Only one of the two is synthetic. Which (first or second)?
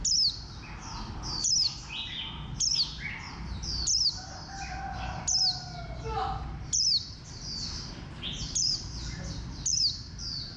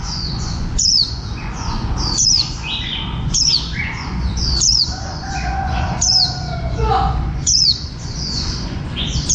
second